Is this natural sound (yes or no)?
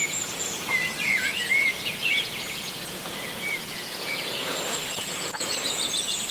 no